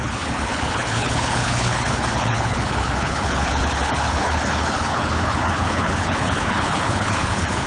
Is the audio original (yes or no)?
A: no